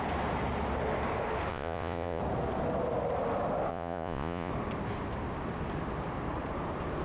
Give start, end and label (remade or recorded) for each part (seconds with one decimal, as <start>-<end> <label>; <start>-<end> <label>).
0.0-1.5 recorded; 1.5-2.2 remade; 2.2-3.7 recorded; 3.7-4.5 remade; 4.5-7.0 recorded